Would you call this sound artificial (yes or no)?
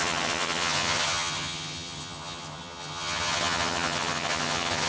yes